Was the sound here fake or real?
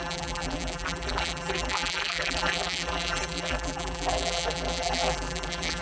fake